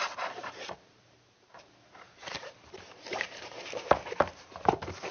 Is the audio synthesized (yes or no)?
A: yes